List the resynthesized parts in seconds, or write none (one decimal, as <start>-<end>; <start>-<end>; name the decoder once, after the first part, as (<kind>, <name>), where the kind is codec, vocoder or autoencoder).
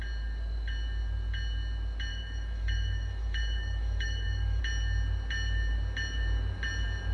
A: 2.1-4.6 (autoencoder, DAC-VAE)